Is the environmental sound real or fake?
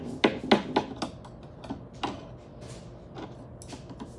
real